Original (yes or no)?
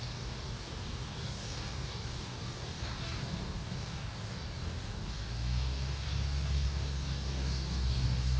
no